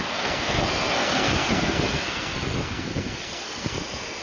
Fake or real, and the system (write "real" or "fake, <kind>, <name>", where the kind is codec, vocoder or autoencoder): fake, codec, SNAC